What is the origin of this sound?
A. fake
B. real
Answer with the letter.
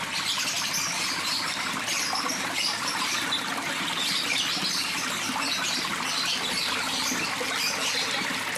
A